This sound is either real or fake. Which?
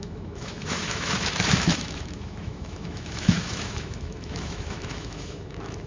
fake